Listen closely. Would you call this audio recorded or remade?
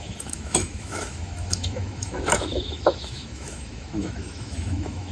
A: remade